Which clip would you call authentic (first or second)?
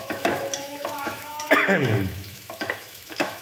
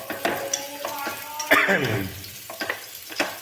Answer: second